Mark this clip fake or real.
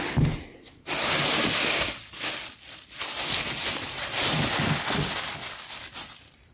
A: real